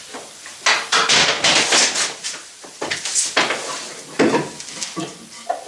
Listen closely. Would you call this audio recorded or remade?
recorded